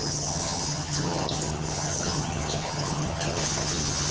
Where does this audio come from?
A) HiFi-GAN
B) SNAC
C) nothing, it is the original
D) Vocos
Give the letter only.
A